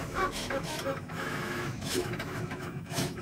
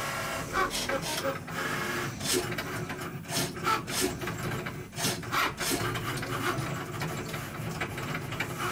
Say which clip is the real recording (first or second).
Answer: second